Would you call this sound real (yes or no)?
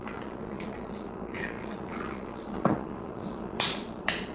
no